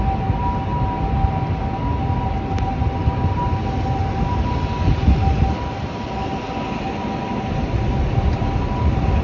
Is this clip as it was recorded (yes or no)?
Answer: yes